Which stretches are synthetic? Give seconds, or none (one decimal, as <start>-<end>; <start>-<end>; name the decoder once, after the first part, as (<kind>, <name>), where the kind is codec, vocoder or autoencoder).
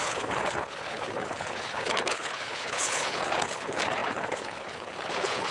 0.0-5.5 (codec, HILCodec)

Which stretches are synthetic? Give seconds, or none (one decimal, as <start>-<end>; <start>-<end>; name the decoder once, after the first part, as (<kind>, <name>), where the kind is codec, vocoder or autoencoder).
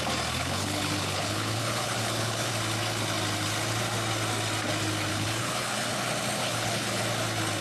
0.4-2.5 (codec, HILCodec); 5.1-5.9; 6.4-7.0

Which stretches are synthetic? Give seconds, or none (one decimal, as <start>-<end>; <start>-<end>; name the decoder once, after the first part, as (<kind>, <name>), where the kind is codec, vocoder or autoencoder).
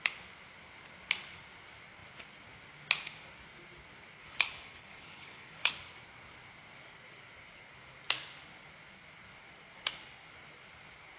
4.2-5.7 (codec, HILCodec)